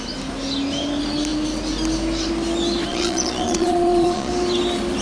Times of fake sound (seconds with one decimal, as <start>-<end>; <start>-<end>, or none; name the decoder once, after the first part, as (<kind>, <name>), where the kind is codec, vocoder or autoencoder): 2.9-4.3 (vocoder, Vocos)

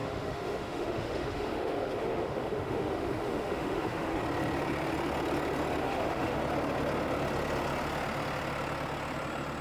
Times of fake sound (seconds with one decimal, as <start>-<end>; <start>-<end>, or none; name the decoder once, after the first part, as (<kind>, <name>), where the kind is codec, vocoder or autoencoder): 0.0-4.2 (autoencoder, DAC-VAE); 5.8-6.4

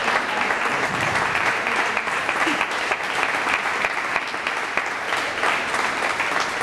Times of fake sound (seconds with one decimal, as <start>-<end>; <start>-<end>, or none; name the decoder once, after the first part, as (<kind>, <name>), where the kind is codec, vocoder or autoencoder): 0.0-3.0 (vocoder, BigVGAN v2)